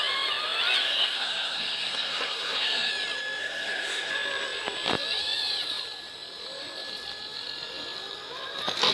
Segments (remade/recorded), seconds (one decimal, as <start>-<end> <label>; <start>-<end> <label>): 0.0-0.8 recorded; 0.8-2.9 remade; 2.9-3.4 recorded; 3.4-4.1 remade; 4.1-8.9 recorded